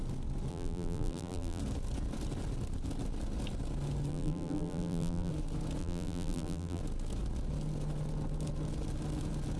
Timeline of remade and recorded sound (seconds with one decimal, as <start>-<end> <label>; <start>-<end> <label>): 0.0-0.5 recorded; 0.5-1.6 remade; 1.6-4.1 recorded; 4.1-5.3 remade; 5.3-5.8 recorded; 5.8-6.8 remade; 6.8-9.6 recorded